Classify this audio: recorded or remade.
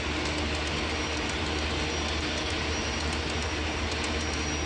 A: recorded